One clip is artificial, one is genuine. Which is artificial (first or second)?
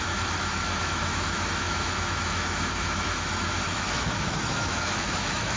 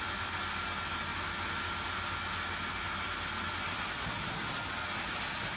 first